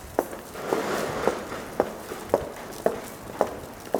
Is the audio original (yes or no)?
yes